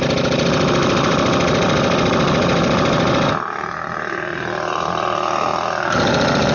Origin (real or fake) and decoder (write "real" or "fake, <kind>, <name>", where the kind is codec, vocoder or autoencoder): real